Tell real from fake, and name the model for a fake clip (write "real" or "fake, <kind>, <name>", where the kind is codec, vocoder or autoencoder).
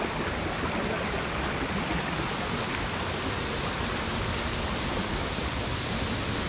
real